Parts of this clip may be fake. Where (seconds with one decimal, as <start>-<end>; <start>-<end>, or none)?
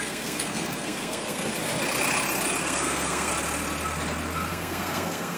0.0-1.5; 2.6-3.3; 4.5-5.4